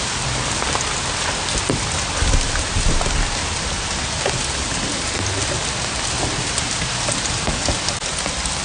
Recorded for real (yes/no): yes